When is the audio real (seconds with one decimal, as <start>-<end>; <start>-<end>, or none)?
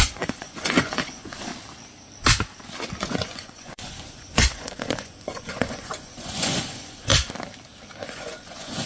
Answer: 1.5-3.0; 7.1-8.0